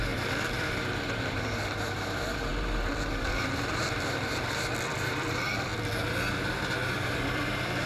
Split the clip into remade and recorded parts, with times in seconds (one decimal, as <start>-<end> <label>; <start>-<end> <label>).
0.0-5.7 remade; 5.7-7.1 recorded; 7.1-7.9 remade